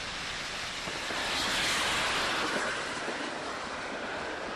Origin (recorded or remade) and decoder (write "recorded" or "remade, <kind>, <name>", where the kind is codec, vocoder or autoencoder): recorded